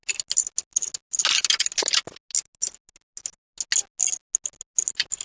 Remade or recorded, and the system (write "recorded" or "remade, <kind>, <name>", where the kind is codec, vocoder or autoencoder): recorded